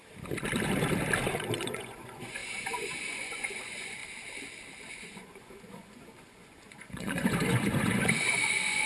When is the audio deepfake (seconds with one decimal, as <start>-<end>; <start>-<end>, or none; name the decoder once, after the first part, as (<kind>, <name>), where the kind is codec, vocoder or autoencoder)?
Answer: 1.6-4.0 (vocoder, Vocos); 4.9-8.9

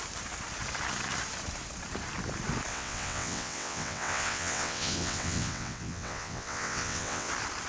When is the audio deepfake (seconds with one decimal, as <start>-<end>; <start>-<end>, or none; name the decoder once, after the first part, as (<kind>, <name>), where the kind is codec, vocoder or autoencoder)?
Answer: 2.7-7.3 (vocoder, WaveNeXt)

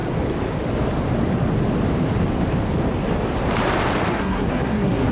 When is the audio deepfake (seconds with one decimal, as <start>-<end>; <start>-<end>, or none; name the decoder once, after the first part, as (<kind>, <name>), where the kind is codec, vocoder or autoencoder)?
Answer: 4.1-5.1 (codec, SNAC)

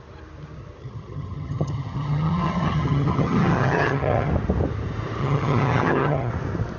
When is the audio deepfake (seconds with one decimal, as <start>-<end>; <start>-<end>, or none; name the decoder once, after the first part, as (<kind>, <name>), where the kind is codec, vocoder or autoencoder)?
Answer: 0.8-4.3 (vocoder, HiFi-GAN); 5.2-6.3

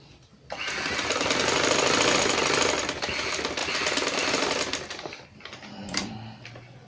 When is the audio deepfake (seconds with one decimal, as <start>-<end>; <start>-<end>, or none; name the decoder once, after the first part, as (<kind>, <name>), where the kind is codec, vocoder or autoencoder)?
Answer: none

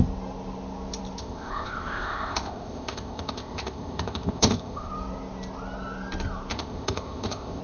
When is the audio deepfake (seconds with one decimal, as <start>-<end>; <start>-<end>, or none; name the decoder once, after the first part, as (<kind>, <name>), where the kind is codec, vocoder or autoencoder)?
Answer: 1.2-4.9 (codec, ZipCodec); 6.5-7.6

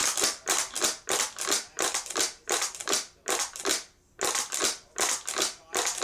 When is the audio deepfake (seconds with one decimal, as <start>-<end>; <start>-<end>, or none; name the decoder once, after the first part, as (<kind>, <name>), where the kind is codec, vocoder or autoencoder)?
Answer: none

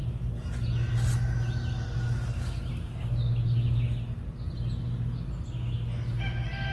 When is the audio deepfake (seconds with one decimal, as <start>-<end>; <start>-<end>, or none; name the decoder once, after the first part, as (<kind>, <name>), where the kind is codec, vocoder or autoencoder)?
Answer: none